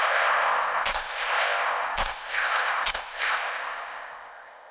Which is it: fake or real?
fake